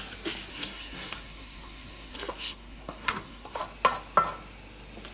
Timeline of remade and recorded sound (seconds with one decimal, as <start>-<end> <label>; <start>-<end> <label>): 0.0-0.5 recorded; 0.5-3.6 remade; 3.6-5.1 recorded